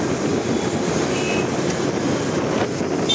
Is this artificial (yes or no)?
no